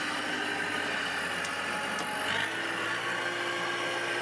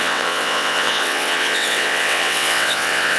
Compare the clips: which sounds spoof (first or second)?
second